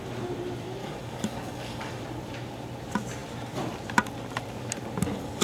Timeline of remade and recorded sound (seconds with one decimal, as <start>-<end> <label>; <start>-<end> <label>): 0.0-0.8 recorded; 0.8-2.0 remade; 2.0-5.4 recorded